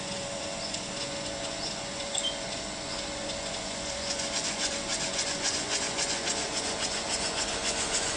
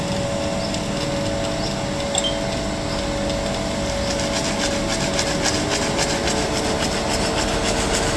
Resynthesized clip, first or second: first